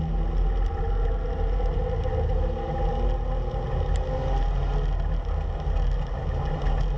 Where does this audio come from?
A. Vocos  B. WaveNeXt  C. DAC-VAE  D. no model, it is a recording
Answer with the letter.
D